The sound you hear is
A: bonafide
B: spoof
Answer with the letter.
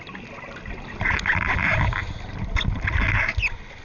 A